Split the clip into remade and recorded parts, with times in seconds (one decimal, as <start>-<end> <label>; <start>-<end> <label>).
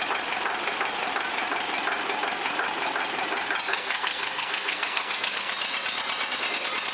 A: 0.0-3.7 recorded; 3.7-5.5 remade; 5.5-6.9 recorded